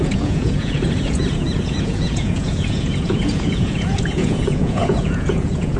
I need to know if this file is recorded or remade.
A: remade